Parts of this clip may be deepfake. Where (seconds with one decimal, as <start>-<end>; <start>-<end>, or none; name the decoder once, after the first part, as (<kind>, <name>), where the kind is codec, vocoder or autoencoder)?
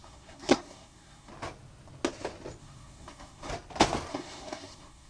0.0-1.3 (codec, SNAC); 2.6-3.5; 4.1-5.1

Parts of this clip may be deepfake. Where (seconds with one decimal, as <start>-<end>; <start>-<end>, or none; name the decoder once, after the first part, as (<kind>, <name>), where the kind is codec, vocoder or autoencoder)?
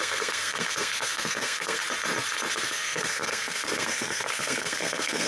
0.0-1.8 (codec, SNAC); 2.5-5.3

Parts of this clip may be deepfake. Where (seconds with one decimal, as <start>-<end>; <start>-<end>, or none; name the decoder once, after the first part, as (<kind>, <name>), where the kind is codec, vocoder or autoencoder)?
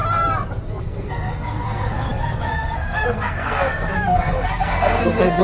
0.8-5.4 (codec, SNAC)